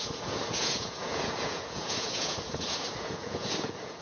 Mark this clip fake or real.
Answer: fake